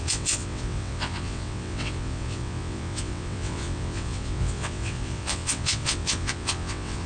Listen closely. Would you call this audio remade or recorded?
remade